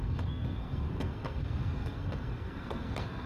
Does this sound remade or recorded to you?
remade